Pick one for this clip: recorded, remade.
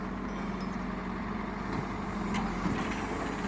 recorded